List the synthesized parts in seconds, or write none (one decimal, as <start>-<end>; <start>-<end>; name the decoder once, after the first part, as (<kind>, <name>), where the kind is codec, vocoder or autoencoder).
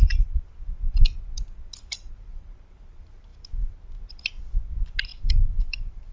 5.1-6.1 (vocoder, BigVGAN v2)